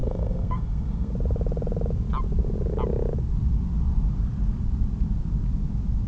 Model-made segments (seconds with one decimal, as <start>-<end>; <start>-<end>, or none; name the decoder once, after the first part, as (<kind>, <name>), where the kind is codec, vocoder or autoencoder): 0.0-1.1 (codec, SNAC)